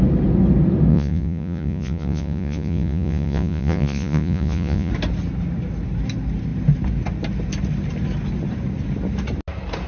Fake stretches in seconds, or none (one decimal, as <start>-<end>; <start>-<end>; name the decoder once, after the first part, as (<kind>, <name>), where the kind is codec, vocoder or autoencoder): 0.9-4.9 (vocoder, Vocos)